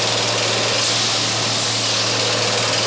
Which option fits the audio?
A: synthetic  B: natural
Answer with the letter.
B